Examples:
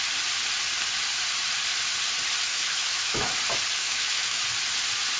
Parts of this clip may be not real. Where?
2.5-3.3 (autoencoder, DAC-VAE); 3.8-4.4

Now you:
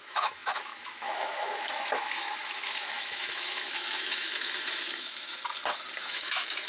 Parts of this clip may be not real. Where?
0.0-5.4 (autoencoder, DAC-VAE); 6.0-6.7

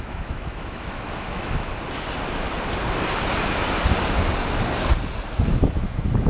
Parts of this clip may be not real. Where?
0.0-1.7 (autoencoder, DAC-VAE); 5.5-6.3